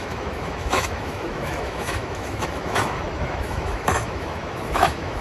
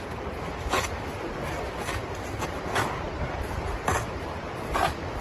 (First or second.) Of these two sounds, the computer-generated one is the first